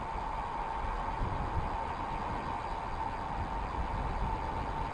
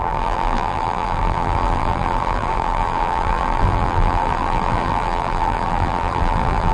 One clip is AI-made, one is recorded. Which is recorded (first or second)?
first